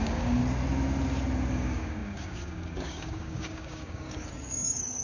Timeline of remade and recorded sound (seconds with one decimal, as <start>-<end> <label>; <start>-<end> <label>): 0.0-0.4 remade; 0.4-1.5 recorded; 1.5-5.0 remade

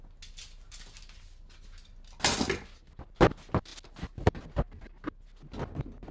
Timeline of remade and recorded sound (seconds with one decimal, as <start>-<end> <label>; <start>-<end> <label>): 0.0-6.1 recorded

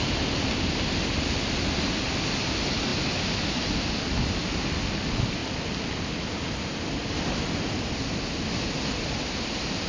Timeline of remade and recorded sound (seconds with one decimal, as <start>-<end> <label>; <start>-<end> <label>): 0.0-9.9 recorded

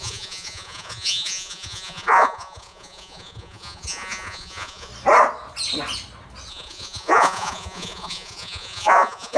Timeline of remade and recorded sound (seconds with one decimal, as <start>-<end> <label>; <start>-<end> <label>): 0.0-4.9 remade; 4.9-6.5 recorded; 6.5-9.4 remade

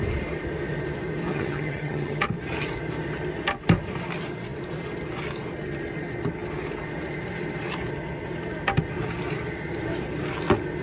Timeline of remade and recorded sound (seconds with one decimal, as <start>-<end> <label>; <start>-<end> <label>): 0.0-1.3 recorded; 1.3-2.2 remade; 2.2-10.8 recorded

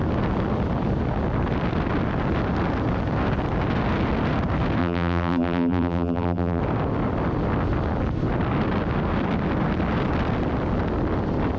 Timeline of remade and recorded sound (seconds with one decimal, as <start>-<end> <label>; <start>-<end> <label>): 0.0-4.8 recorded; 4.8-6.6 remade; 6.6-11.6 recorded